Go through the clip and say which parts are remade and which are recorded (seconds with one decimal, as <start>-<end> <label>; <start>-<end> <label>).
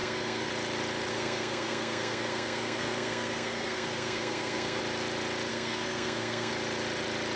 0.0-0.5 remade; 0.5-1.1 recorded; 1.1-4.8 remade; 4.8-5.5 recorded; 5.5-6.5 remade; 6.5-7.4 recorded